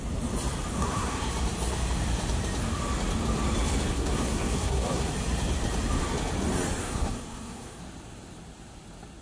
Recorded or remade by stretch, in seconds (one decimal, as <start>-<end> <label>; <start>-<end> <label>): 0.0-0.7 recorded; 0.7-1.3 remade; 1.3-3.9 recorded; 3.9-5.1 remade; 5.1-6.8 recorded; 6.8-7.8 remade; 7.8-9.2 recorded